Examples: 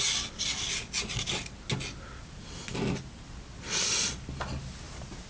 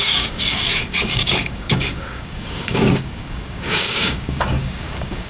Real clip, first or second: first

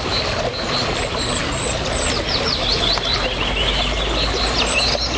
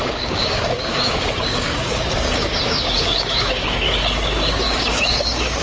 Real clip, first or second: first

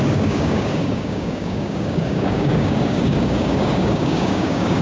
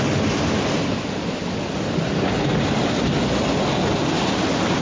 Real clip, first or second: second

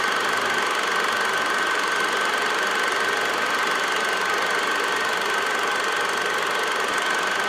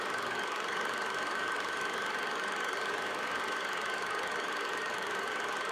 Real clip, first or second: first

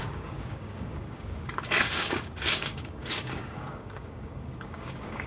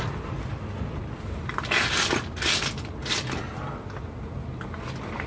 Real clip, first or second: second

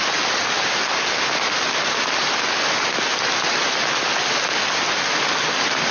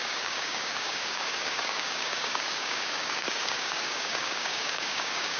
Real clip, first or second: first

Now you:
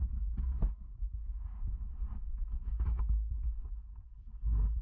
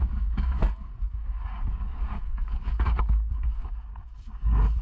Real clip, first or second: first